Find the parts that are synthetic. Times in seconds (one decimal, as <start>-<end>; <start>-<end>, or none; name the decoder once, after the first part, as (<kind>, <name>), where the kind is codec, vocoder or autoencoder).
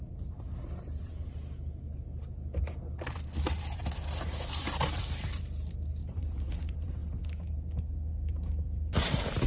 0.0-1.1 (vocoder, BigVGAN v2); 3.8-7.0; 8.1-9.5